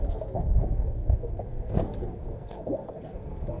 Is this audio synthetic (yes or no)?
yes